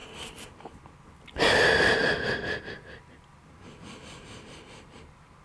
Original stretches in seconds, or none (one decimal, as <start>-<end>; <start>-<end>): 0.0-5.4